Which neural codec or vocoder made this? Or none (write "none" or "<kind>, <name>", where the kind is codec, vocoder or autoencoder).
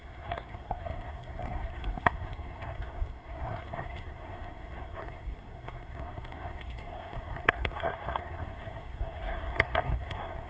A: codec, SNAC